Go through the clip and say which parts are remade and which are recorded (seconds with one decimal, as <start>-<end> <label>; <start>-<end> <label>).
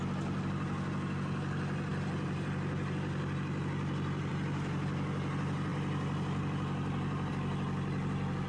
0.0-8.5 recorded